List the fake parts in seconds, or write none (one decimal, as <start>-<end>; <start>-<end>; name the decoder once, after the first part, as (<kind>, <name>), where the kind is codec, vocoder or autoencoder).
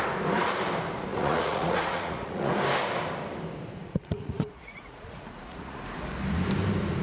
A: 1.1-2.5 (vocoder, Vocos); 3.8-5.8